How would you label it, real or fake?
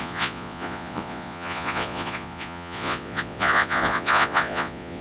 fake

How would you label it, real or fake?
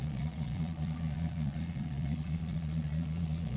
fake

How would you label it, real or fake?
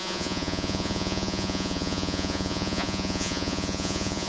fake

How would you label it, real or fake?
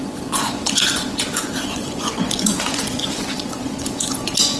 fake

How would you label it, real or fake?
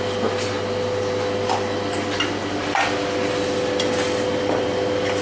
real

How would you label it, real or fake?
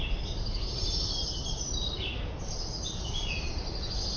real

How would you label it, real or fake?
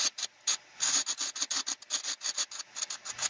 real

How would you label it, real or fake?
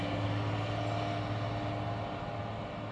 real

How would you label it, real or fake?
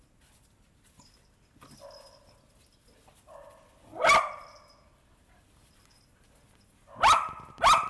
real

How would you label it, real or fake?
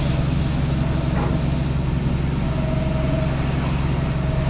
real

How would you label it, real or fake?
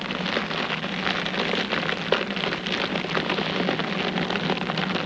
real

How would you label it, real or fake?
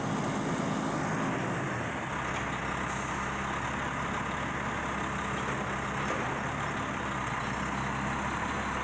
real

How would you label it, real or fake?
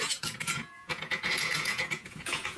fake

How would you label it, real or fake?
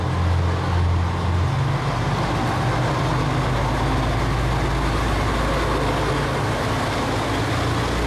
real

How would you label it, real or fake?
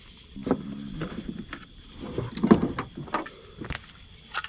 real